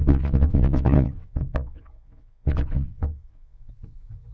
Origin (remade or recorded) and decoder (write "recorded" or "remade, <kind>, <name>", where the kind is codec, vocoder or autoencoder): remade, vocoder, WaveNeXt